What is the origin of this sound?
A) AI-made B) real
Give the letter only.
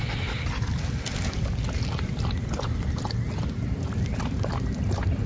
B